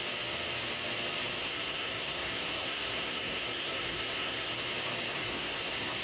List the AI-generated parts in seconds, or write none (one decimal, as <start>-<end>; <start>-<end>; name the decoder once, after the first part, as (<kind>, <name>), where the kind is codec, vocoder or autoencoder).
1.4-4.5 (codec, SNAC); 5.1-6.0